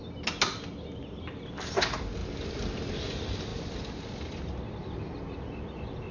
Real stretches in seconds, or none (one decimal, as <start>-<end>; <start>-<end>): 0.0-6.1